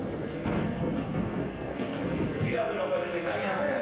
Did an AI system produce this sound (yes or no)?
yes